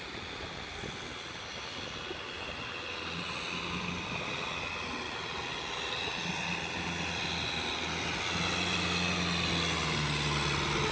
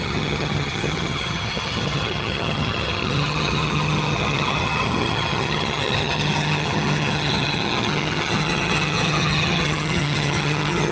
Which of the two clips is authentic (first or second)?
first